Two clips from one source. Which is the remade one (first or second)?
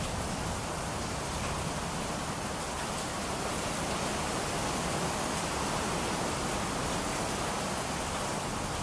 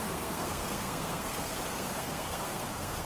second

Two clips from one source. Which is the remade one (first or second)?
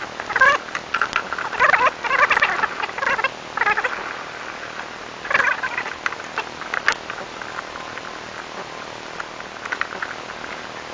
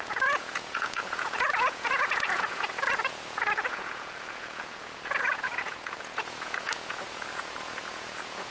second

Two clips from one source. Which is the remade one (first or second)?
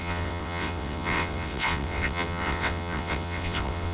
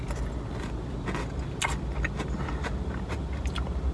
first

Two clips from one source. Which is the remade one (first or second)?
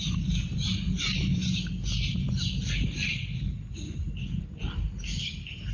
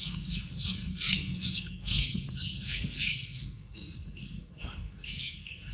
second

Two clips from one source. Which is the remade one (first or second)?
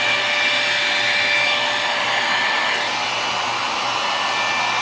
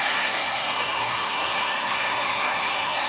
second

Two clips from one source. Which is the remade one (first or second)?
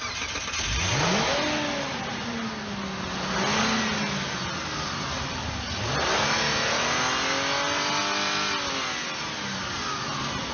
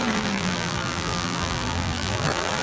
second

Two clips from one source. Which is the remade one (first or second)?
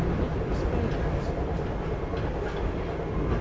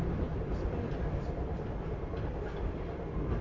second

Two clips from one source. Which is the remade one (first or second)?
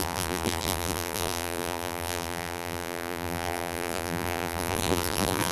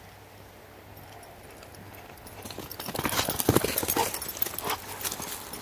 first